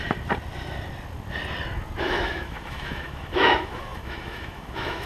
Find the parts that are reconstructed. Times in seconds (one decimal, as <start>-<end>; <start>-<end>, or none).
2.0-5.1